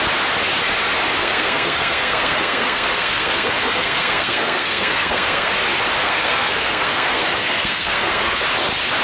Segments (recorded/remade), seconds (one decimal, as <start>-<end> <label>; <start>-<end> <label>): 0.0-1.2 recorded; 1.2-5.5 remade; 5.5-6.0 recorded; 6.0-8.4 remade; 8.4-9.0 recorded